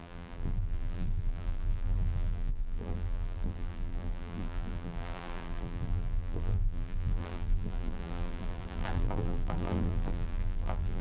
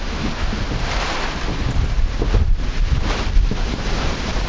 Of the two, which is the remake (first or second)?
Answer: first